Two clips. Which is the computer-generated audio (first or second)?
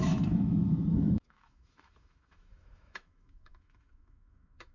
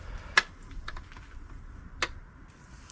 first